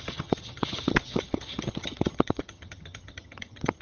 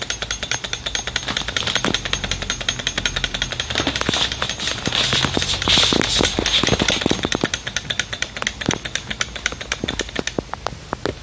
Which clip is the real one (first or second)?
second